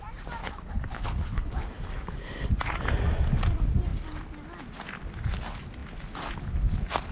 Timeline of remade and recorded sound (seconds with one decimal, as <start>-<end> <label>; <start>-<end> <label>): 0.0-0.4 recorded; 0.4-1.8 remade; 1.8-7.1 recorded